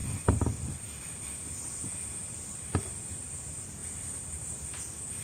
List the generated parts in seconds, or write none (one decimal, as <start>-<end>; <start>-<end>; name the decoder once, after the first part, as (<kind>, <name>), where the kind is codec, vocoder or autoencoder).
0.0-1.2 (vocoder, BigVGAN v2); 2.2-2.7; 3.8-4.4